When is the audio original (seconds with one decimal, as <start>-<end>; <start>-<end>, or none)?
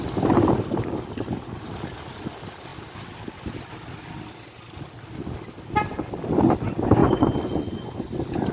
0.0-7.0; 7.9-8.5